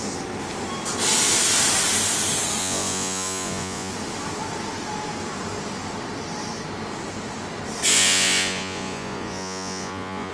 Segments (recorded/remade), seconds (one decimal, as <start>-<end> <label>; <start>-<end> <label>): 0.0-2.6 recorded; 2.6-3.9 remade; 3.9-7.9 recorded; 7.9-10.3 remade